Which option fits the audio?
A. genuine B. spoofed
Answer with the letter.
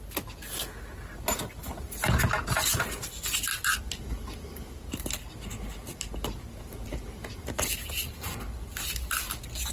A